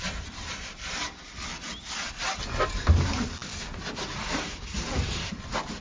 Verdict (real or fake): real